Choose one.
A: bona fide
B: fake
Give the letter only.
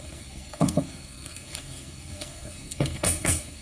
B